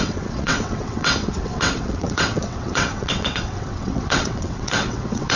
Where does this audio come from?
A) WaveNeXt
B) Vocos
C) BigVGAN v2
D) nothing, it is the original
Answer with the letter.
A